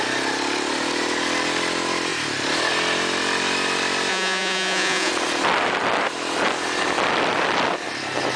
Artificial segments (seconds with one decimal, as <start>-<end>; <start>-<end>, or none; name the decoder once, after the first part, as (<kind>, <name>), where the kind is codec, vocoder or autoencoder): 4.1-5.1 (vocoder, Vocos)